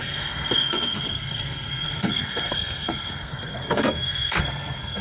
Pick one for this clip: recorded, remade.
remade